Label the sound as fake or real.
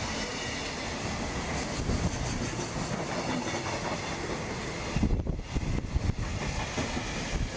real